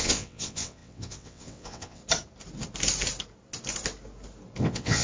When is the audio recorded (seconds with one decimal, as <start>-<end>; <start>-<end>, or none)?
2.0-4.6